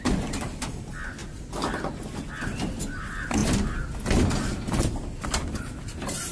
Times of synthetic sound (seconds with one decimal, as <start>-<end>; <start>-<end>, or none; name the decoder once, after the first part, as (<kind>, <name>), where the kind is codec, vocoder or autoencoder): none

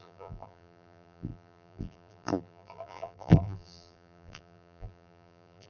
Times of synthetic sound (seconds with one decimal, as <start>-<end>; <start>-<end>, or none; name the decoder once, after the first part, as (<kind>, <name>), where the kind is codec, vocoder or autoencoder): 0.0-5.7 (vocoder, BigVGAN v2)

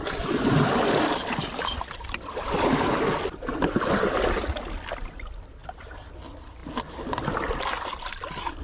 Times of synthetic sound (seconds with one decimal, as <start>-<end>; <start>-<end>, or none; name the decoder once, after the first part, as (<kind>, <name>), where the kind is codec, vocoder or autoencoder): 5.6-6.1 (vocoder, BigVGAN v2)

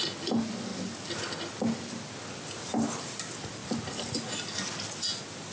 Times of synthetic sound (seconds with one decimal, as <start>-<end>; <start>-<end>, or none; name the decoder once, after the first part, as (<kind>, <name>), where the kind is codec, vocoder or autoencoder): none

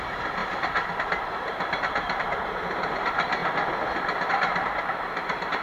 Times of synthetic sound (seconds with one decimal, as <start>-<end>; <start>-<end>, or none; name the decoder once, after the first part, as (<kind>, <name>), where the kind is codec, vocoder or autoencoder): 0.0-3.4 (vocoder, BigVGAN v2); 4.3-5.6

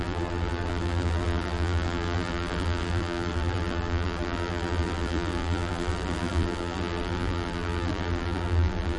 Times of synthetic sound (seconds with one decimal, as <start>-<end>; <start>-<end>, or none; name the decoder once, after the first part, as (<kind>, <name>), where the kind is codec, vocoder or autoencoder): 0.0-9.0 (vocoder, BigVGAN v2)

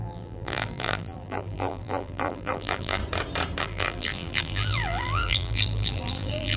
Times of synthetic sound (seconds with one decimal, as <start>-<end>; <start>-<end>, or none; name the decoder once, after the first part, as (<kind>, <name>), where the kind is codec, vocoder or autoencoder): 0.0-3.0 (vocoder, BigVGAN v2); 3.6-6.6